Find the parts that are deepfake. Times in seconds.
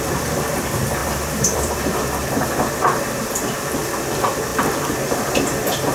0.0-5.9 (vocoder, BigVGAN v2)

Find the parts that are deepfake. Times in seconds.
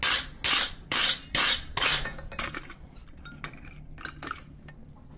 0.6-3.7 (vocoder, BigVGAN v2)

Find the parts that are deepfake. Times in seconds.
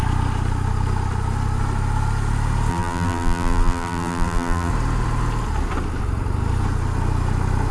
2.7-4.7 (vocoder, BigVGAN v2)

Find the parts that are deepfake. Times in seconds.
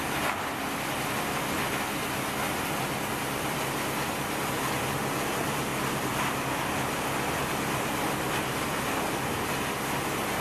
none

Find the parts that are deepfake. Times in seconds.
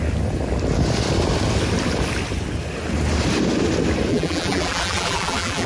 4.1-5.7 (vocoder, BigVGAN v2)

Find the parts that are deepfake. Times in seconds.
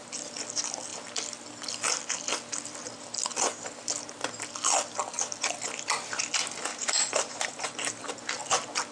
6.7-8.1 (vocoder, BigVGAN v2)